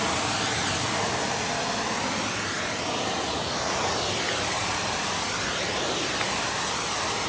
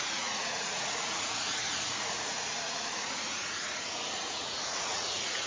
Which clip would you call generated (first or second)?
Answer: second